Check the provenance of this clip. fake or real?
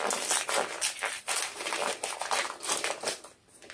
real